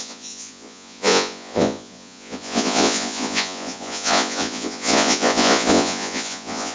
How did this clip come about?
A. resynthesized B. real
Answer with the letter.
A